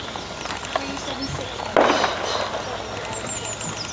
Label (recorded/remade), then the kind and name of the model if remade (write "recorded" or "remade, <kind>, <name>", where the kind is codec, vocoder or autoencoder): recorded